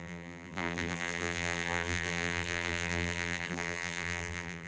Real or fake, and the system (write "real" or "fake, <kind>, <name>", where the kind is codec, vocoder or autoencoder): fake, vocoder, BigVGAN v2